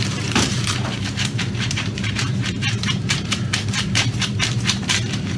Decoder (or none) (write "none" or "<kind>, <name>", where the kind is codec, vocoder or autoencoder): vocoder, BigVGAN v2